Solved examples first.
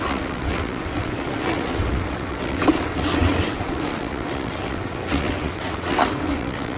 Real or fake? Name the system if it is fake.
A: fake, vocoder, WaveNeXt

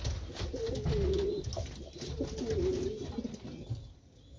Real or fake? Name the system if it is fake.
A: real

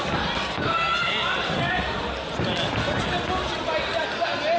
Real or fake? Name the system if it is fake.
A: real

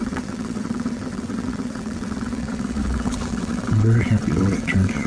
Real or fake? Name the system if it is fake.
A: fake, vocoder, WaveNeXt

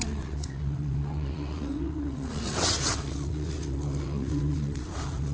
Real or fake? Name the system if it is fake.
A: fake, vocoder, WaveNeXt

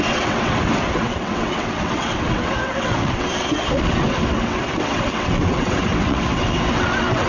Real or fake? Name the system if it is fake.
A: fake, vocoder, WaveNeXt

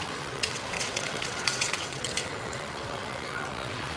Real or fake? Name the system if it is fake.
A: fake, vocoder, WaveNeXt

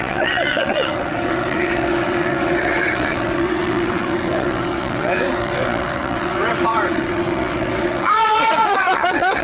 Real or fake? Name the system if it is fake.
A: fake, vocoder, WaveNeXt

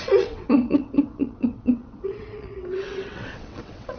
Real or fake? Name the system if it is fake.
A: fake, vocoder, WaveNeXt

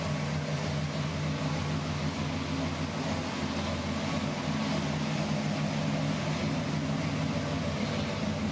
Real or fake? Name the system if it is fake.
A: real